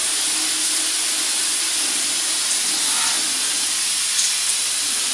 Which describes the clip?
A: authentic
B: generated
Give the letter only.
A